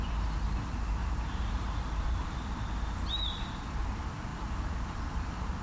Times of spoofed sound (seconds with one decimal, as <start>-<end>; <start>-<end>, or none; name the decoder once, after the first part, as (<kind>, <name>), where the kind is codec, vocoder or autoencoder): 1.0-2.4 (vocoder, BigVGAN v2)